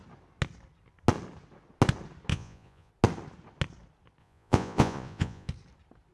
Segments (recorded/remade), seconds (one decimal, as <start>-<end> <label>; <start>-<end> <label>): 0.0-2.3 recorded; 2.3-2.9 remade; 2.9-4.2 recorded; 4.2-5.5 remade; 5.5-6.1 recorded